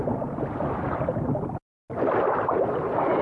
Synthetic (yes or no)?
no